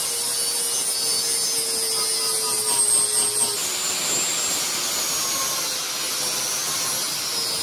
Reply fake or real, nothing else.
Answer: real